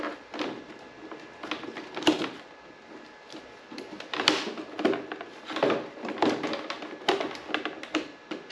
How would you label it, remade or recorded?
recorded